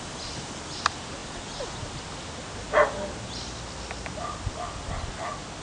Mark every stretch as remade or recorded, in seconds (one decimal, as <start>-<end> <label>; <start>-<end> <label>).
0.0-5.6 recorded